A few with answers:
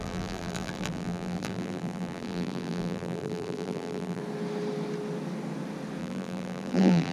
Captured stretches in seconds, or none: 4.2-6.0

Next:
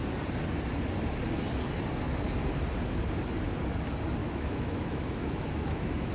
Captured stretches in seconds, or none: 0.0-4.2

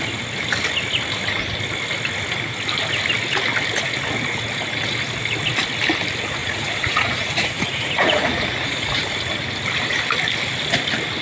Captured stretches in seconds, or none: 0.0-6.4; 9.0-11.2

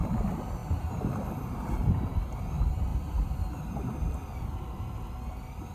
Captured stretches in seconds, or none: 0.0-2.9; 4.8-5.7

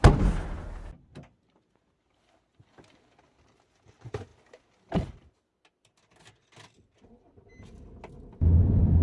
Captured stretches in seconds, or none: 0.0-9.0

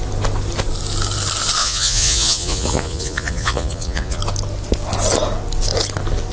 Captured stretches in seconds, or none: 0.0-1.6; 4.2-6.3

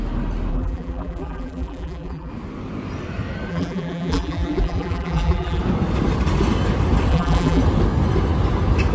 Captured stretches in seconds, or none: 0.0-0.5; 2.3-3.5; 5.6-7.1; 7.6-8.9

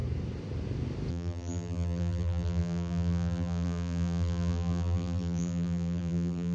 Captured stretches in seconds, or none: 0.0-1.1